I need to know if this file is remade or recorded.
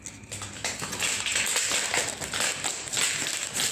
recorded